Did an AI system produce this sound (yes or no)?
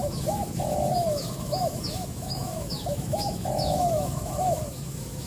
yes